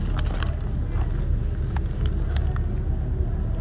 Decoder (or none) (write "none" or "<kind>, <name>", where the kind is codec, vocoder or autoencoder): none